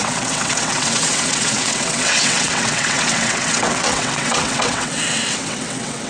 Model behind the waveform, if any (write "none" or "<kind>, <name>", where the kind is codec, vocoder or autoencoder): vocoder, WaveNeXt